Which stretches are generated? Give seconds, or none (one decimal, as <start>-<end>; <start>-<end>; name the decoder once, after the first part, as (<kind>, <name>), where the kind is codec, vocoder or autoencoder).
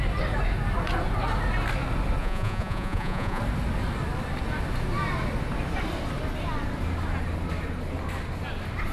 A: 2.2-3.4 (vocoder, Vocos)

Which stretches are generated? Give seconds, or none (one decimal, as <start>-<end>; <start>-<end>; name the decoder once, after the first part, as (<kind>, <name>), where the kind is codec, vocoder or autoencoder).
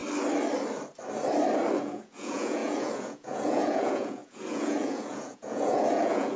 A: 1.8-6.4 (vocoder, Vocos)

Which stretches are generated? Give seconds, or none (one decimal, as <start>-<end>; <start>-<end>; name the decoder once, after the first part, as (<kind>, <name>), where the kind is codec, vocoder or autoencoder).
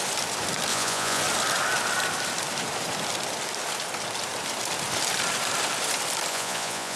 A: 0.7-1.2 (vocoder, Vocos); 6.3-7.0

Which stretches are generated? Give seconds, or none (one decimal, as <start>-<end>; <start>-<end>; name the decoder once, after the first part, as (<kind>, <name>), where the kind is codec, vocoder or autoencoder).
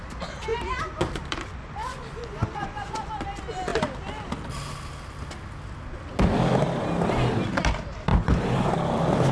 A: 1.6-3.1 (vocoder, Vocos); 8.1-8.7